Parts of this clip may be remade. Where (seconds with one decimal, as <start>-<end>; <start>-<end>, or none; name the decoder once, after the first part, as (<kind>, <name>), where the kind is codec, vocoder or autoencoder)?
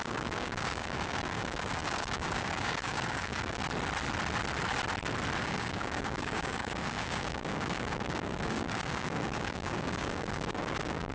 0.0-3.6 (codec, DAC); 5.4-11.1